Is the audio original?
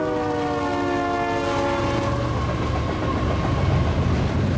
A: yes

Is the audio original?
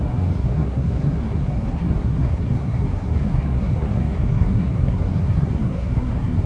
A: no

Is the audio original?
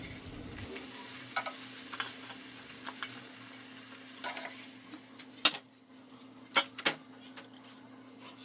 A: yes